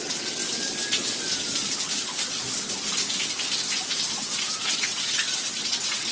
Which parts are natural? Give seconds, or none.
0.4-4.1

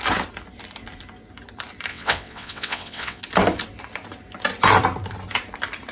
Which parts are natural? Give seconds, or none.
0.0-1.9; 3.2-5.9

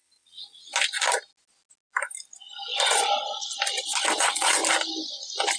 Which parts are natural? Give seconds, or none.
0.7-4.1; 4.6-5.6

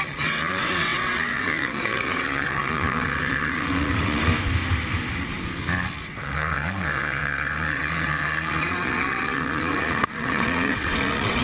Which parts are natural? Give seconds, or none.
4.3-6.0

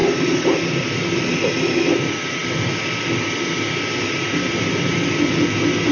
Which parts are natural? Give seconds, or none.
0.0-5.9

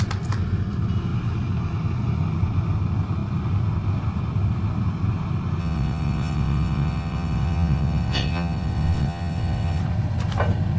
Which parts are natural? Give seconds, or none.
0.0-5.6; 9.8-10.8

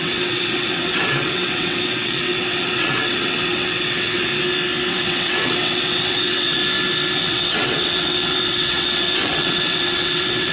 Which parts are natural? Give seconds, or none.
4.3-4.9; 6.6-7.2

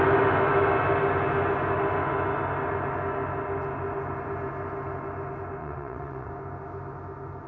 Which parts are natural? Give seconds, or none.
0.0-5.6; 6.3-7.5